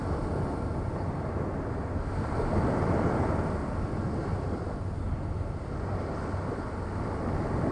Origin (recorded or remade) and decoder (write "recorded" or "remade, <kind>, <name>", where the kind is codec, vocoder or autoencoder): recorded